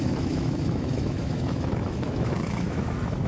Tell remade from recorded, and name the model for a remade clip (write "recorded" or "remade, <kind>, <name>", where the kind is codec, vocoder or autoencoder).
remade, autoencoder, DAC-VAE